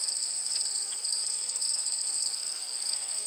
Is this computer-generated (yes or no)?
yes